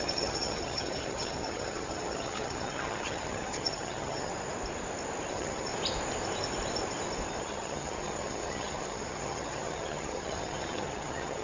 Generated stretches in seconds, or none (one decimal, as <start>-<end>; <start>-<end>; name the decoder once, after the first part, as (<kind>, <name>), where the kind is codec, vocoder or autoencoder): 0.0-4.3 (vocoder, HiFi-GAN); 5.3-5.7; 7.4-11.4